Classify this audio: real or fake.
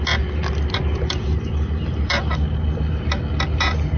real